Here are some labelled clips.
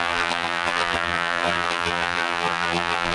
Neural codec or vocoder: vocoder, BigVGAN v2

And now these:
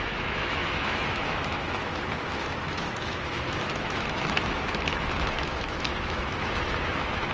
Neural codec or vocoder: autoencoder, DAC-VAE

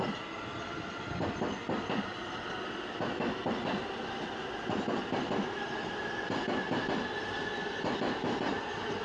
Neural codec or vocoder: none